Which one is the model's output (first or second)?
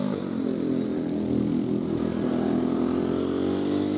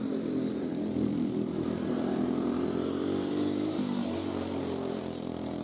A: second